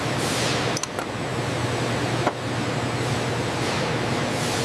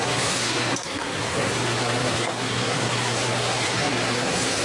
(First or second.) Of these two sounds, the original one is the first